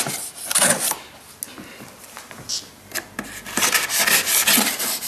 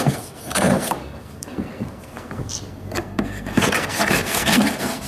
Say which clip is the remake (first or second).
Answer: second